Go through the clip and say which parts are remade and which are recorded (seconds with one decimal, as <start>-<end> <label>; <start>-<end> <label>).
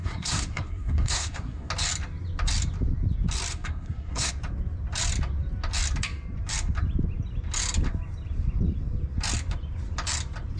0.0-1.7 remade; 1.7-3.5 recorded; 3.5-4.3 remade; 4.3-10.6 recorded